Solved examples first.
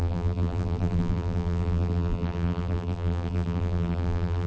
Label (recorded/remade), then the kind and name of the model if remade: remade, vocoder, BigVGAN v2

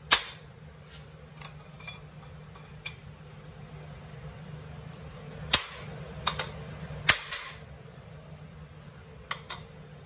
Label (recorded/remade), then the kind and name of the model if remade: recorded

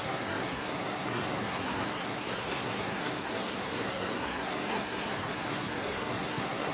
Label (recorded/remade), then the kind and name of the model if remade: remade, codec, SNAC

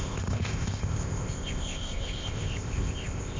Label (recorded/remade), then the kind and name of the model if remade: remade, codec, ZipCodec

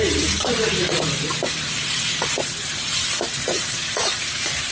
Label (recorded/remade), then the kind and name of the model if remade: remade, vocoder, BigVGAN v2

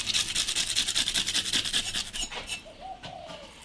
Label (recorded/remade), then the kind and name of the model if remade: recorded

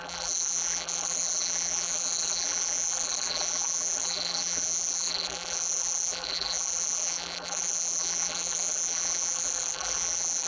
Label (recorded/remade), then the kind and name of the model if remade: remade, vocoder, BigVGAN v2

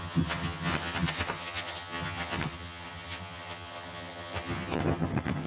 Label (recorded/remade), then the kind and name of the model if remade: remade, vocoder, HiFi-GAN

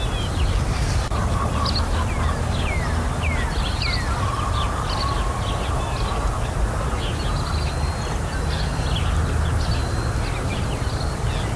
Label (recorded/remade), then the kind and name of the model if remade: recorded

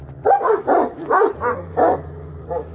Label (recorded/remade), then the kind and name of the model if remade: recorded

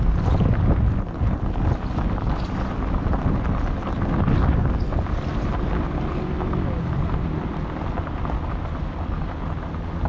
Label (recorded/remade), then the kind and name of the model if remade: recorded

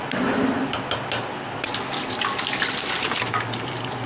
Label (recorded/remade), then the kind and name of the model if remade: recorded